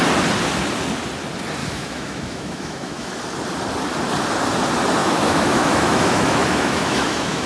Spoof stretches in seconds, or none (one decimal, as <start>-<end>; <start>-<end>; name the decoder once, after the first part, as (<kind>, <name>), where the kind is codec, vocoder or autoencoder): 1.6-3.1 (autoencoder, DAC-VAE); 5.0-7.5

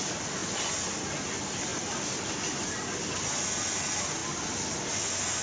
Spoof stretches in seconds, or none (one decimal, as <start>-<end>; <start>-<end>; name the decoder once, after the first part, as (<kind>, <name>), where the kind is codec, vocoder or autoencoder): none

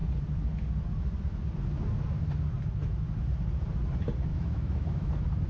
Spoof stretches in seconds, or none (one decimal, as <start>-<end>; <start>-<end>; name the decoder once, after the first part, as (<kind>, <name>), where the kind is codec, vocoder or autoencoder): 4.3-5.1 (autoencoder, DAC-VAE)